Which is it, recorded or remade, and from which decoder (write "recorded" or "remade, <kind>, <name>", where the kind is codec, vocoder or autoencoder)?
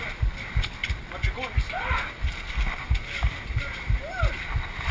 recorded